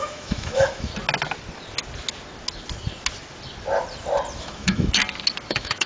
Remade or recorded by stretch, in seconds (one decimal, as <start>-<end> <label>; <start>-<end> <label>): 0.0-0.9 remade; 0.9-4.4 recorded; 4.4-5.0 remade; 5.0-5.5 recorded; 5.5-5.9 remade